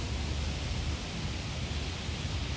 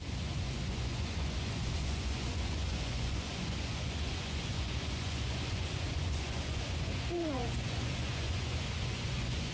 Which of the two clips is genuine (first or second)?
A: first